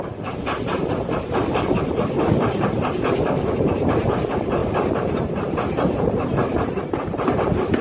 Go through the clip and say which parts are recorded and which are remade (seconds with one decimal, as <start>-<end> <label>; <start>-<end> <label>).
0.0-7.8 recorded